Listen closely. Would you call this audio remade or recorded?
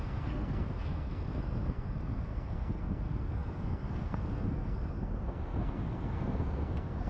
remade